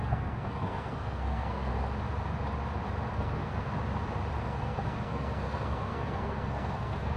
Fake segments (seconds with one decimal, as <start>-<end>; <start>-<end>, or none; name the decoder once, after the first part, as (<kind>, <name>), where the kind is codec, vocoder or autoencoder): 0.0-1.7 (codec, SNAC); 3.1-3.7; 4.4-7.2